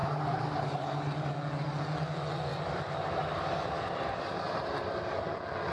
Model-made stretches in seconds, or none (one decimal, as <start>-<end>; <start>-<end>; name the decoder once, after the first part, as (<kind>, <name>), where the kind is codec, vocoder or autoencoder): 0.0-1.3 (vocoder, BigVGAN v2); 2.5-4.4